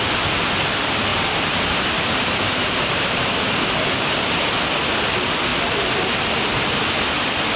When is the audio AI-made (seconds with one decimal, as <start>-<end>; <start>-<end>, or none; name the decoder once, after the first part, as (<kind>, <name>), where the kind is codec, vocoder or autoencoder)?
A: 1.1-4.6 (vocoder, BigVGAN v2)